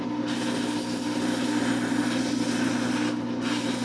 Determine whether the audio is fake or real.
real